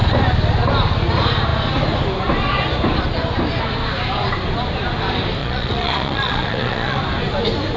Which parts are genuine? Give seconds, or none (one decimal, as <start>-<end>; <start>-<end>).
0.0-5.4; 7.0-7.8